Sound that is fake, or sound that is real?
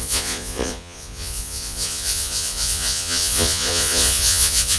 fake